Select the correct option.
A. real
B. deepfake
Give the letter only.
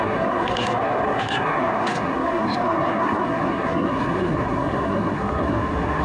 B